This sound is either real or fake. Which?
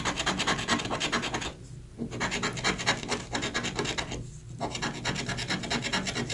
real